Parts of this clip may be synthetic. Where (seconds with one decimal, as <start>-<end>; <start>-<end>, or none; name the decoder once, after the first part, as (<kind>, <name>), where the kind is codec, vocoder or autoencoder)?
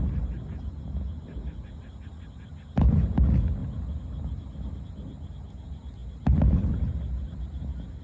none